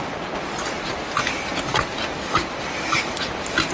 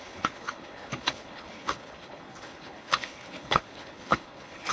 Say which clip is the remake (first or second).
second